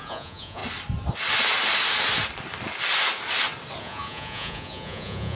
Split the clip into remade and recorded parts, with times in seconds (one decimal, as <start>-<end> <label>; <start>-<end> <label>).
0.0-0.6 remade; 0.6-3.8 recorded; 3.8-5.4 remade